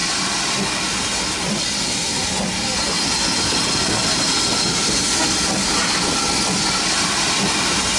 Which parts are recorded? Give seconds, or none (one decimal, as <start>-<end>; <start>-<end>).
0.0-8.0